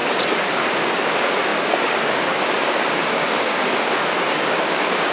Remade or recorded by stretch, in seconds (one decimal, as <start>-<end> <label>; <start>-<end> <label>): 0.0-0.5 recorded; 0.5-5.1 remade